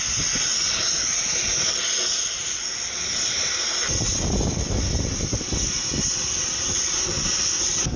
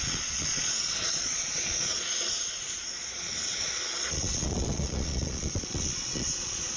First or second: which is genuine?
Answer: first